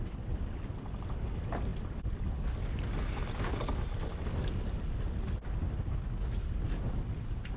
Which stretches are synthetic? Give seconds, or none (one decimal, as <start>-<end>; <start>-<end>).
none